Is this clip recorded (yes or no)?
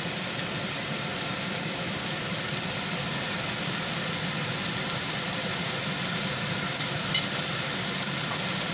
no